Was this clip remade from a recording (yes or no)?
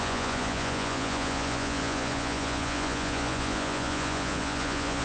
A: yes